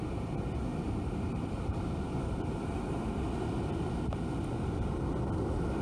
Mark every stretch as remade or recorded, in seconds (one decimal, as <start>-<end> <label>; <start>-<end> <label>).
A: 0.0-0.7 recorded; 0.7-3.0 remade; 3.0-5.8 recorded